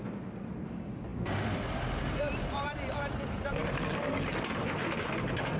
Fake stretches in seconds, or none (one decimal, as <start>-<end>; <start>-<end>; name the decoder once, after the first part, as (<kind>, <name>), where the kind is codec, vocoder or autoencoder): none